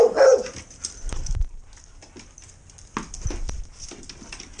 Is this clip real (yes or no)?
yes